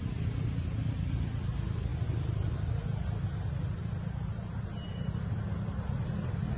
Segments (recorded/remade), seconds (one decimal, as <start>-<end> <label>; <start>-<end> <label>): 0.0-6.6 recorded